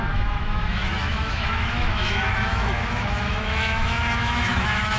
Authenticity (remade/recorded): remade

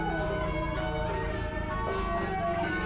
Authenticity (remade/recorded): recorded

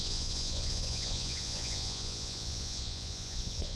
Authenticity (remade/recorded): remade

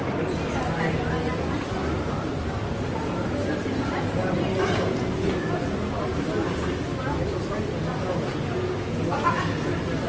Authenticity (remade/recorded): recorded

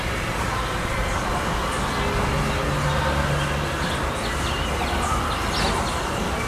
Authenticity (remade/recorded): recorded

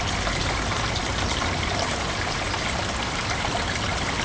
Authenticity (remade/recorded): recorded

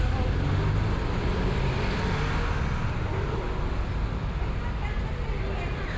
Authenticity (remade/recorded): recorded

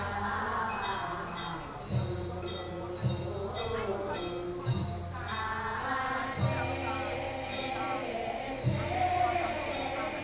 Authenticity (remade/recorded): recorded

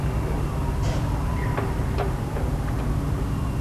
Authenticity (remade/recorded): recorded